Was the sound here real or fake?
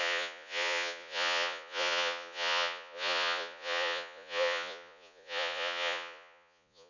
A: fake